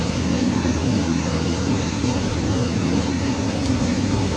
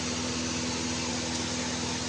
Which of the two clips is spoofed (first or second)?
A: first